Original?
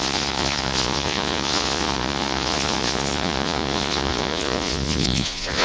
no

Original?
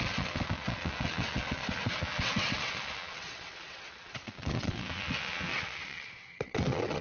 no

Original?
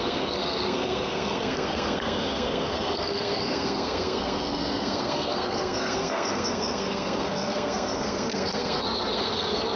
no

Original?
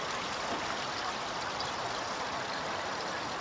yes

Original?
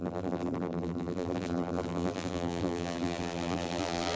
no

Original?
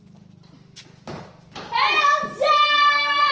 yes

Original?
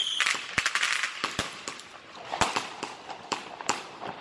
yes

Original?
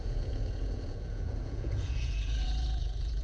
no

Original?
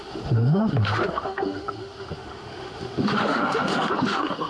no